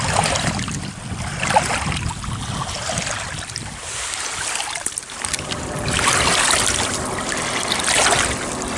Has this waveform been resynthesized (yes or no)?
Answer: no